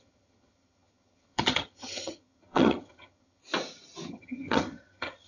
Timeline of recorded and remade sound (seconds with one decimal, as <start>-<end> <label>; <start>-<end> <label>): 0.0-3.4 remade; 3.4-4.1 recorded; 4.1-5.3 remade